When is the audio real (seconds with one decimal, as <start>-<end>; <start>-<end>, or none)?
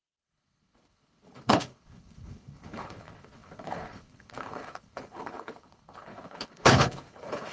none